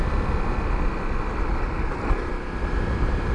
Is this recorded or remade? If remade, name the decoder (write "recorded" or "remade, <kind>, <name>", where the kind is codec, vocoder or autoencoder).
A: recorded